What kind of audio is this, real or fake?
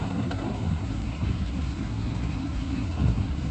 fake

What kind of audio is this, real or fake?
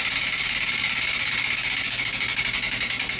real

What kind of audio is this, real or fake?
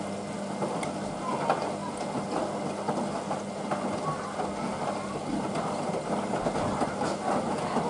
real